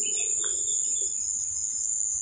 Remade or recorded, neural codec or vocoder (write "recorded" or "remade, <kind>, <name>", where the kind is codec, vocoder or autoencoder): recorded